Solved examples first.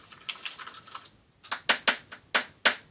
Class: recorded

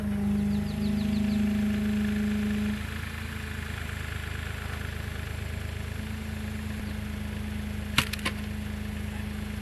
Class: recorded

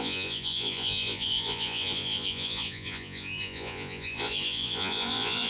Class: remade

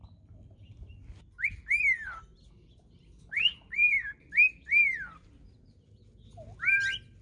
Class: recorded